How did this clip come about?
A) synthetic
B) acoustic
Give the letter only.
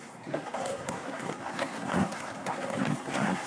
A